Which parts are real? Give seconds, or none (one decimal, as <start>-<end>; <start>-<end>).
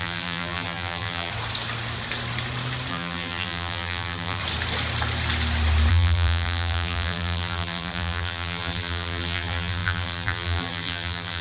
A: 1.3-2.9; 4.4-5.9